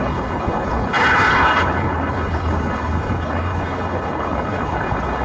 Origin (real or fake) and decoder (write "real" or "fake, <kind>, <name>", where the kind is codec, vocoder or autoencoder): fake, codec, HILCodec